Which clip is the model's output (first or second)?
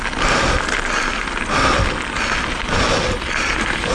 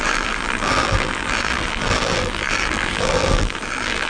second